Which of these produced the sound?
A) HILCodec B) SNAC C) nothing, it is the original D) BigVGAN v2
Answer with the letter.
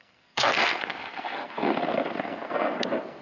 B